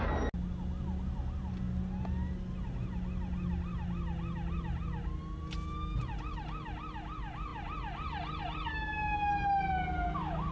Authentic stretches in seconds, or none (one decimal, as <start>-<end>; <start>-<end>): 0.0-10.5